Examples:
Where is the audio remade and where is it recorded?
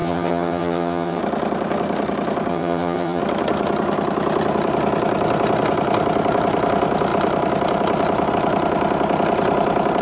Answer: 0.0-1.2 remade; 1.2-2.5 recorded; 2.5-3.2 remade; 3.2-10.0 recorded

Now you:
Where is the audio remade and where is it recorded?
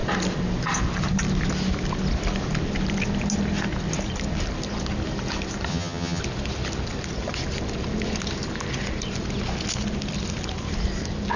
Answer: 0.0-5.7 recorded; 5.7-6.2 remade; 6.2-11.4 recorded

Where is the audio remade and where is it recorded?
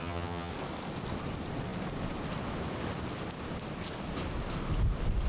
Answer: 0.0-0.5 remade; 0.5-5.3 recorded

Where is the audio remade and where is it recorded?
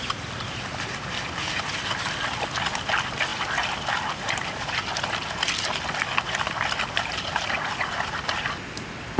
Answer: 0.0-9.2 recorded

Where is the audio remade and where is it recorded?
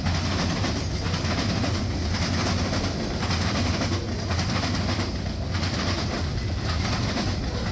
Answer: 0.0-7.7 recorded